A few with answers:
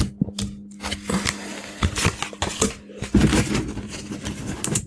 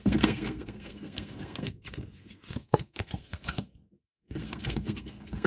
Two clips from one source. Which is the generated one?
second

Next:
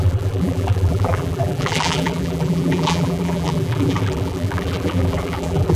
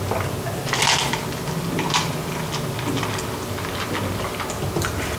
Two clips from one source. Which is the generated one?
first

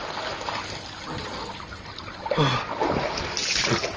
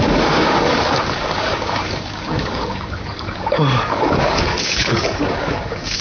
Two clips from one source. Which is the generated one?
second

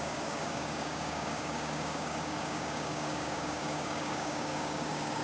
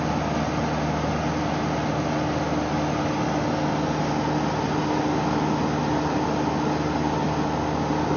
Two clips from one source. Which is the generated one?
first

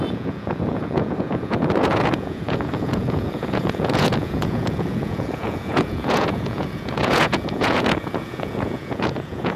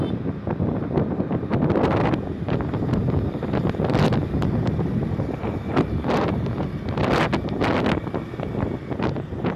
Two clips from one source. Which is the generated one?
first